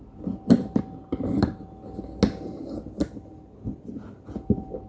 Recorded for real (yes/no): yes